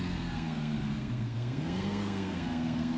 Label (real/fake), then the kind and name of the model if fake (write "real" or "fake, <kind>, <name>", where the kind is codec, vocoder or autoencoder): fake, codec, SNAC